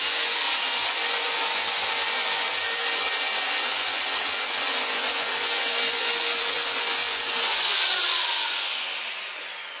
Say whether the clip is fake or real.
fake